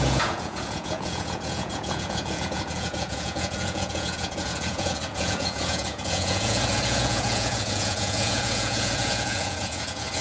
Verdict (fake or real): fake